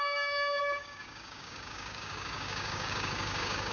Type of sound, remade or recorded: remade